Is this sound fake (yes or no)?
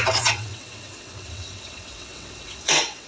yes